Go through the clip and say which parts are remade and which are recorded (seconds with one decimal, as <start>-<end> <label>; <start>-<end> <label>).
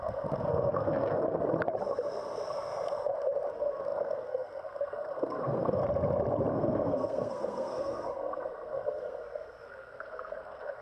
0.0-1.4 remade; 1.4-3.5 recorded; 3.5-5.8 remade; 5.8-6.5 recorded; 6.5-10.8 remade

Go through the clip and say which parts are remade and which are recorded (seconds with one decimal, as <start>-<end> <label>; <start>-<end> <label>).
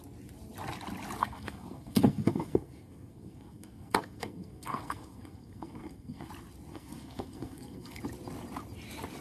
0.0-1.2 recorded; 1.2-6.3 remade; 6.3-6.7 recorded; 6.7-8.0 remade; 8.0-9.2 recorded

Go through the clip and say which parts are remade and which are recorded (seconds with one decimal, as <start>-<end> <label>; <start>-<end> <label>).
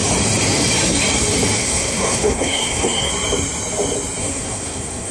0.0-1.6 recorded; 1.6-3.1 remade; 3.1-4.2 recorded; 4.2-5.1 remade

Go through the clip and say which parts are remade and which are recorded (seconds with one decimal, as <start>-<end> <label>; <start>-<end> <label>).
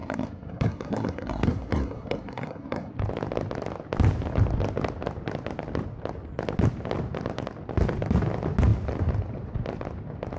0.0-2.9 remade; 2.9-10.4 recorded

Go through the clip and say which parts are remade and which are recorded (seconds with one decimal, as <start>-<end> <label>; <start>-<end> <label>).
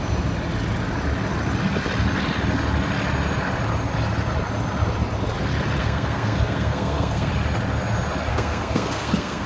0.0-5.8 recorded; 5.8-7.3 remade; 7.3-8.3 recorded; 8.3-9.5 remade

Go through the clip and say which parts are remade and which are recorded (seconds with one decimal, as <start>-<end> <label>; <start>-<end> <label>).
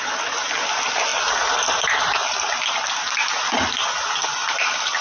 0.0-5.0 recorded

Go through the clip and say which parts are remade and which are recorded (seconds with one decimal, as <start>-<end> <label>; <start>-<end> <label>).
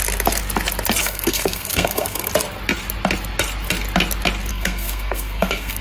0.0-1.0 recorded; 1.0-2.3 remade; 2.3-4.5 recorded; 4.5-5.8 remade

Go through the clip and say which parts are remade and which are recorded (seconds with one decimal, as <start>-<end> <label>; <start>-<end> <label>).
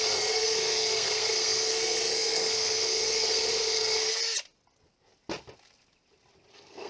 0.0-4.2 remade; 4.2-6.5 recorded; 6.5-6.9 remade